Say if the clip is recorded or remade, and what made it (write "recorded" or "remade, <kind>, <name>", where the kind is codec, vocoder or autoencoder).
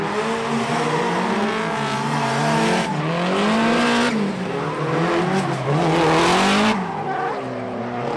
recorded